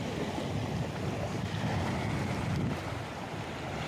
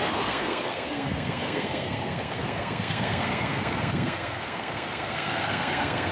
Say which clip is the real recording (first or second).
first